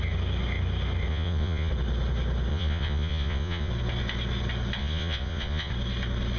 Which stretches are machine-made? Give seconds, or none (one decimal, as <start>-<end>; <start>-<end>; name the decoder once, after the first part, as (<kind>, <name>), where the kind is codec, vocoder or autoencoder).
1.1-1.7 (vocoder, Vocos); 2.5-3.7; 4.8-5.7